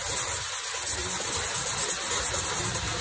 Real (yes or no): yes